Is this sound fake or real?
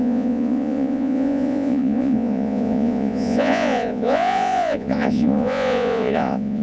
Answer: fake